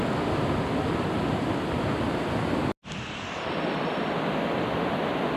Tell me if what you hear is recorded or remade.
recorded